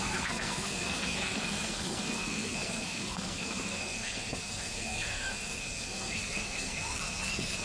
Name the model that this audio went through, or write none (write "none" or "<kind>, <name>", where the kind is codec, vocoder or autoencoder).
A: codec, SNAC